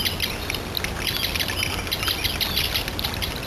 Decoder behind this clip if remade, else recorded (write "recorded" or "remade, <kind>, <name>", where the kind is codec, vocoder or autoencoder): recorded